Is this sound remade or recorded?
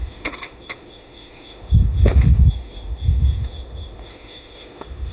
remade